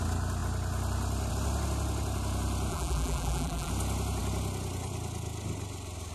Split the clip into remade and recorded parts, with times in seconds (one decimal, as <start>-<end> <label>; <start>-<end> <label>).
0.0-2.7 recorded; 2.7-3.7 remade; 3.7-6.1 recorded